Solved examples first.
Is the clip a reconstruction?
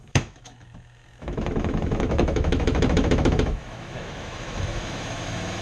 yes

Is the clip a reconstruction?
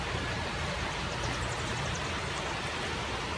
no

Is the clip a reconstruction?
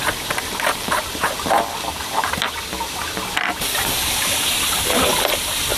no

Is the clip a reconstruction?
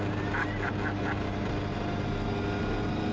no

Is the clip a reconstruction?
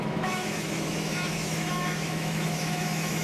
yes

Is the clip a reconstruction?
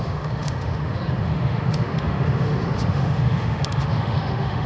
yes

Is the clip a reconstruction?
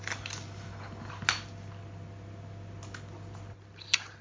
no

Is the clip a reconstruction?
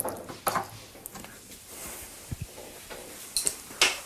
no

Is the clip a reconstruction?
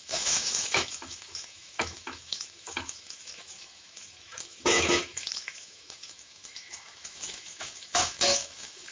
yes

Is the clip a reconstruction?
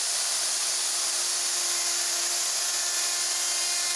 no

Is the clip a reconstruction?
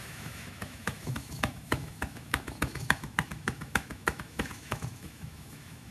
yes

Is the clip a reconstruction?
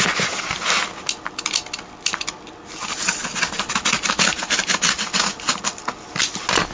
no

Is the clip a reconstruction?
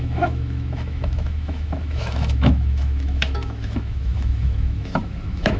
yes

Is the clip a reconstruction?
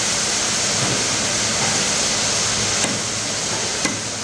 no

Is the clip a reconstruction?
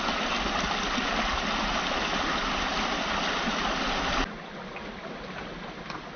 no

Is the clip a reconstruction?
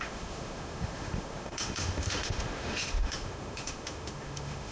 yes